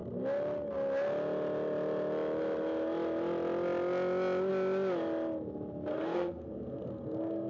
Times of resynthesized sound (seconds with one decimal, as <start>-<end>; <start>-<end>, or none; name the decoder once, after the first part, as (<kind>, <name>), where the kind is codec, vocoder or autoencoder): 5.9-7.5 (codec, SNAC)